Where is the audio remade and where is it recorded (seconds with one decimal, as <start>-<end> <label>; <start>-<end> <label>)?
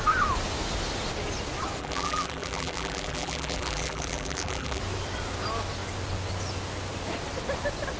0.0-1.8 recorded; 1.8-4.8 remade; 4.8-8.0 recorded